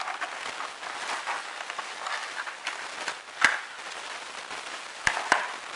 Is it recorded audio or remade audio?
recorded